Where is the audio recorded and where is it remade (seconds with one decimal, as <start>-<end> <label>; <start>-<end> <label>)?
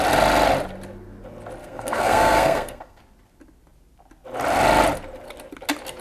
0.0-1.6 recorded; 1.6-3.0 remade; 3.0-6.0 recorded